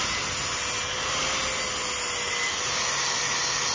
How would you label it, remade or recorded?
recorded